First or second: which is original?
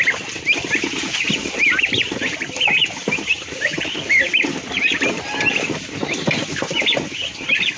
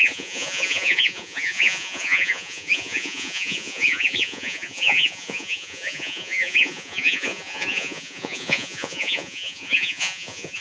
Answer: first